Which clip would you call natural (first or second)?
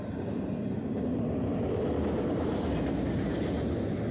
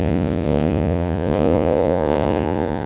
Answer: first